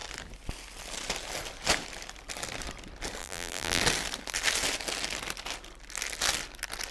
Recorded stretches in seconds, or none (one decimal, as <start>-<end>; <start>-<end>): 0.0-3.2; 3.8-6.9